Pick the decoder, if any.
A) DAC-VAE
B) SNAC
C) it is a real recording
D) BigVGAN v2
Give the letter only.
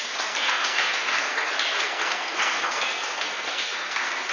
B